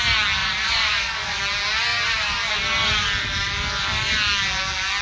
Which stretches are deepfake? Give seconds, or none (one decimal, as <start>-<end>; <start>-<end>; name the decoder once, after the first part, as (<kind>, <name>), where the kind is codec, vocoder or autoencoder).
0.4-1.4 (vocoder, Vocos)